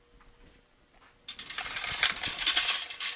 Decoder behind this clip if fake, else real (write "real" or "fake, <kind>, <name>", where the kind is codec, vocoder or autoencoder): real